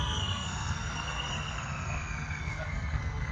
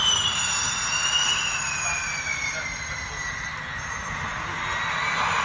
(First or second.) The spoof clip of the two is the first